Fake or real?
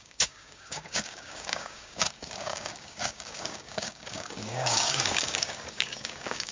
fake